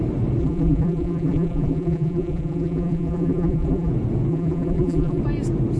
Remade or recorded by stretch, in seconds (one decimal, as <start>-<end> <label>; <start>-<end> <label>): 0.0-0.4 recorded; 0.4-3.9 remade; 3.9-4.3 recorded; 4.3-5.2 remade; 5.2-5.8 recorded